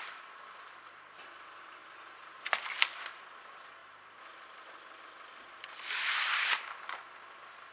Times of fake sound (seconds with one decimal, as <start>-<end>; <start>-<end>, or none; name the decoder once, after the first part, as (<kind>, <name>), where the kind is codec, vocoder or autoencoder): none